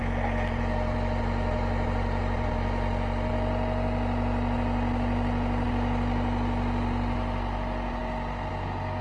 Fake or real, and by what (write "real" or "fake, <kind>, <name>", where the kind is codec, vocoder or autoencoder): real